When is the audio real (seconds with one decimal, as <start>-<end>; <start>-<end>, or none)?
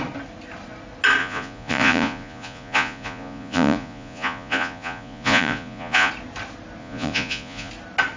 0.0-1.2; 6.1-6.8; 7.7-8.2